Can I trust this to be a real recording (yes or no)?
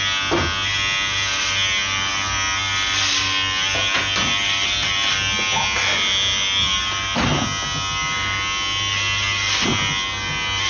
yes